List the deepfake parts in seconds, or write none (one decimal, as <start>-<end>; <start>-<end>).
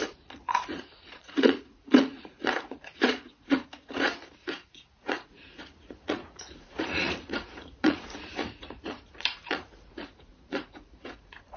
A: 0.0-11.6